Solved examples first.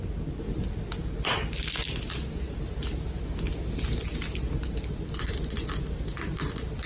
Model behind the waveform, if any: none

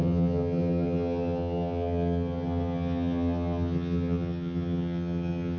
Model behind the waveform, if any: vocoder, HiFi-GAN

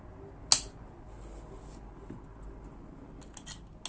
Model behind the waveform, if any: none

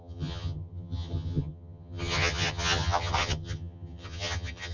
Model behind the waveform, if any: vocoder, HiFi-GAN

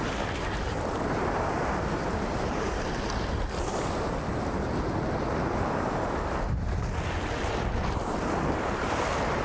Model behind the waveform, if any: none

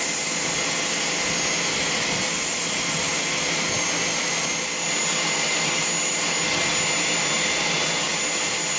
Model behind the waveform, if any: none